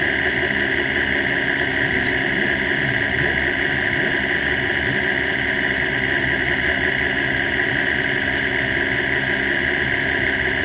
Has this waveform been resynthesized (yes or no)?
no